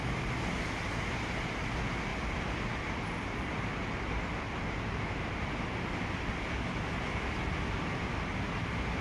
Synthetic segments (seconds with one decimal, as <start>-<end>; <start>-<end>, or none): none